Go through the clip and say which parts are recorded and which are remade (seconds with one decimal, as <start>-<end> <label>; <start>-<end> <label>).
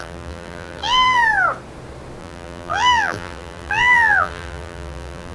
0.0-1.2 remade; 1.2-2.2 recorded; 2.2-5.3 remade